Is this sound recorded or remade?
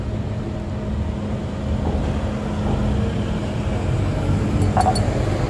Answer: recorded